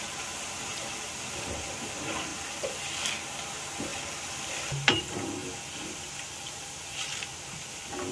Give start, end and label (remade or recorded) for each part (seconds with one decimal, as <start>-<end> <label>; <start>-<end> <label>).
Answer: 0.0-0.7 recorded; 0.7-1.9 remade; 1.9-3.9 recorded; 3.9-5.0 remade; 5.0-5.4 recorded; 5.4-7.3 remade; 7.3-8.1 recorded